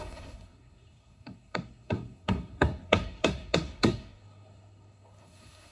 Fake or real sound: fake